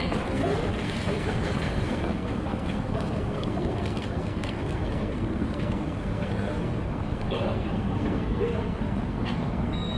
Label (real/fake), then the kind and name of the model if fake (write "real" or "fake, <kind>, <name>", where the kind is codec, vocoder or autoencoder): fake, codec, SNAC